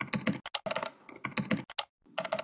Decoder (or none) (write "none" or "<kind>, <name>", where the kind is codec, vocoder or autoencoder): none